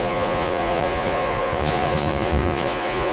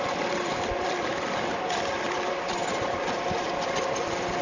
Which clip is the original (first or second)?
second